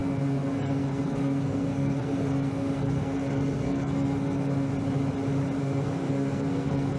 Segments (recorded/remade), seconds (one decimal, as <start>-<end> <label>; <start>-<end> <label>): 0.0-4.7 remade; 4.7-5.6 recorded; 5.6-7.0 remade